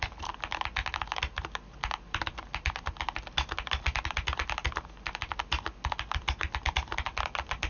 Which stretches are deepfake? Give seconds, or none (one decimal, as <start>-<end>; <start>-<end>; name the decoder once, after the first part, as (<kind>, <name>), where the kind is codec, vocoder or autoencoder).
none